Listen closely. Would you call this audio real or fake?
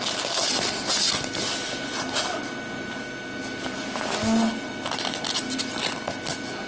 real